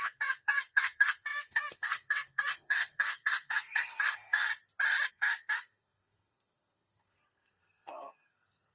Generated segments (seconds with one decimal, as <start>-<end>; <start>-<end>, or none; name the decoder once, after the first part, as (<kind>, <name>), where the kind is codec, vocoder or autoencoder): 0.0-4.5 (codec, SNAC); 5.1-8.7